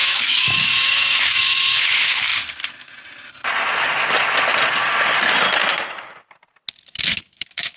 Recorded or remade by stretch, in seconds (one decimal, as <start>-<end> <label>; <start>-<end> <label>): 0.0-2.3 remade; 2.3-7.0 recorded; 7.0-7.8 remade